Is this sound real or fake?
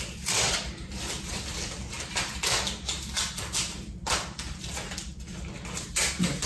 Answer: real